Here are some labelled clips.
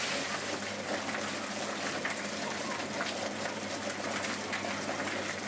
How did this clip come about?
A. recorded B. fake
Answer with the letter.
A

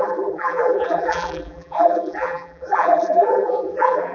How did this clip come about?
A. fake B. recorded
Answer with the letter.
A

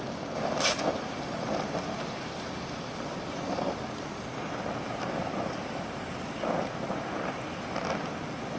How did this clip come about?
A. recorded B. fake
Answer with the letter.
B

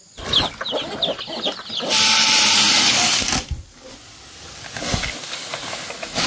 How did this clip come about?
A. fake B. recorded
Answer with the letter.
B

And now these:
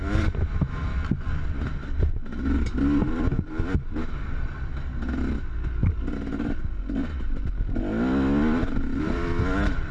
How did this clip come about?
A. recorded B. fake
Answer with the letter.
A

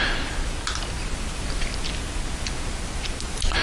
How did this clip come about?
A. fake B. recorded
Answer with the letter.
B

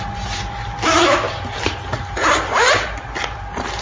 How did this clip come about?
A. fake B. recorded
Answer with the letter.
B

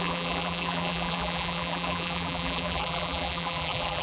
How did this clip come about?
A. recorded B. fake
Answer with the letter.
B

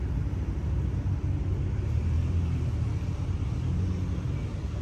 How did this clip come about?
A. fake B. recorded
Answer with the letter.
B